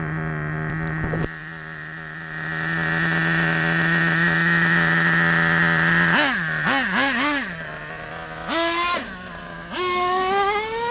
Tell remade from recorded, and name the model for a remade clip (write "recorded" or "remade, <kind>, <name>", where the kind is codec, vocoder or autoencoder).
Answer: recorded